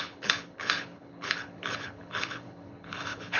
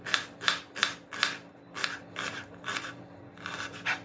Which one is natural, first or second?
second